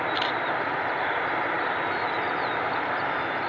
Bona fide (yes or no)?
yes